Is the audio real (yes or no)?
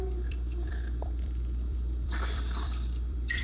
no